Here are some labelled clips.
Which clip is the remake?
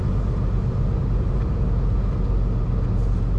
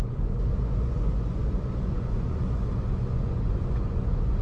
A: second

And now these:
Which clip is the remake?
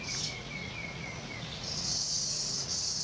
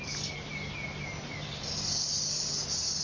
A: first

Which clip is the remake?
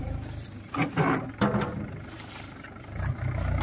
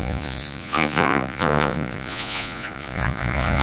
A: second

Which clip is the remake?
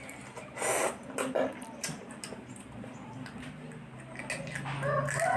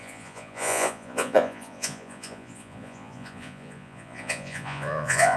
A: second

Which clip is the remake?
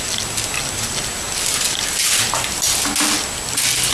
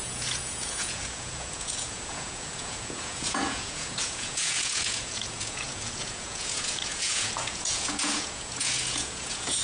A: second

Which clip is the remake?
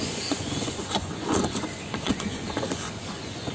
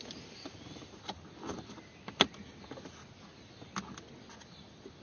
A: first